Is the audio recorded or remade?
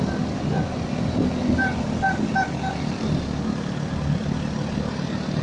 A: recorded